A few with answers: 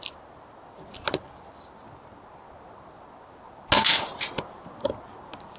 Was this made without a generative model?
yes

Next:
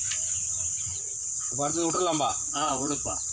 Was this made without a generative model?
no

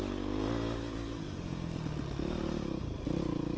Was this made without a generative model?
yes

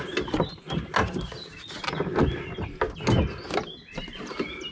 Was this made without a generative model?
yes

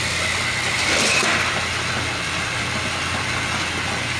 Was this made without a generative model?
yes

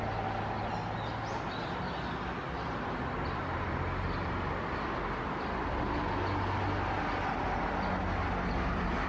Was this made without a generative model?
yes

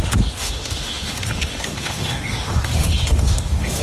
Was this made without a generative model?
no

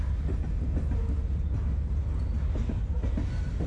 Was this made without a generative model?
yes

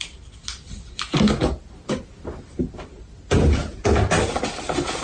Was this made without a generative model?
yes